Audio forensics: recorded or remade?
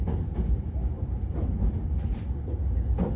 remade